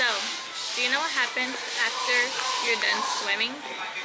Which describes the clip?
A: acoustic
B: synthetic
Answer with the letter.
A